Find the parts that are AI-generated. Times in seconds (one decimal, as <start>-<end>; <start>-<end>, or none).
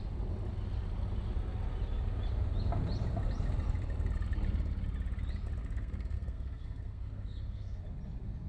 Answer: 5.6-7.8